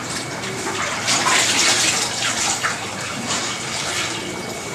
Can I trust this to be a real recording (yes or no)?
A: no